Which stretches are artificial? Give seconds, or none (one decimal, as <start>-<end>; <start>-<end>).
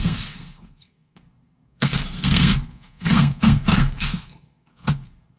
0.0-5.4